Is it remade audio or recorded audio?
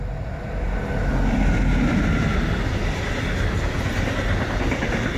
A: recorded